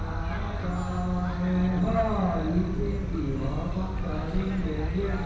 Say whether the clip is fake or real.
real